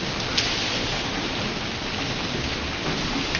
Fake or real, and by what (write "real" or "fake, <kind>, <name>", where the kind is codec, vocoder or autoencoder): real